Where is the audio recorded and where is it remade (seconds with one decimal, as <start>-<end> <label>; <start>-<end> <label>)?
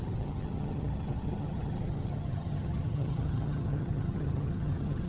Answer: 0.0-5.1 remade